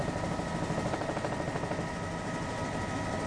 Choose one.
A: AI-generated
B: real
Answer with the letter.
B